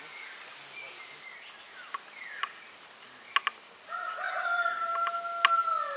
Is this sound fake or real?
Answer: real